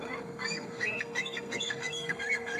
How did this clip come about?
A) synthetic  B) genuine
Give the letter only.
A